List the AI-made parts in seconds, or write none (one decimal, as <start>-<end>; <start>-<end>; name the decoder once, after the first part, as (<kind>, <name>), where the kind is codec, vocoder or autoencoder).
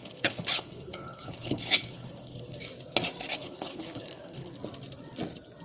0.0-2.6 (codec, HILCodec); 3.3-4.5